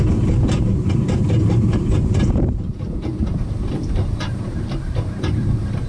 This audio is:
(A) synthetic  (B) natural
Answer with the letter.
A